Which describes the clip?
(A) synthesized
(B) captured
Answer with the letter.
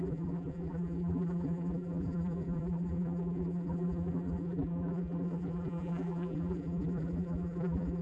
A